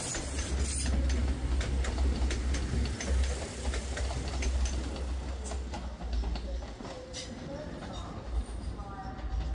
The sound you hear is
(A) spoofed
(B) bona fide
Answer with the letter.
B